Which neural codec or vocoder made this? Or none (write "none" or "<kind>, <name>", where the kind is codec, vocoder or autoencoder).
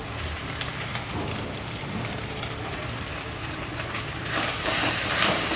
vocoder, BigVGAN v2